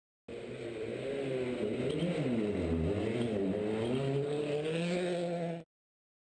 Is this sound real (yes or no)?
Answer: yes